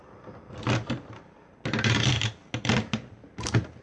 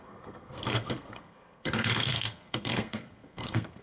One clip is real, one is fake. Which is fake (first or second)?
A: second